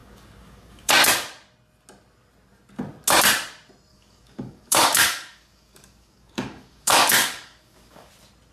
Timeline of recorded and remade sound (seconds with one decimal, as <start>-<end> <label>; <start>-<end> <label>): 0.0-0.9 remade; 0.9-3.9 recorded; 3.9-8.1 remade; 8.1-8.5 recorded